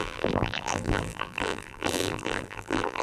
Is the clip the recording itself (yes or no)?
no